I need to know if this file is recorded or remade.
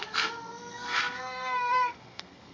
remade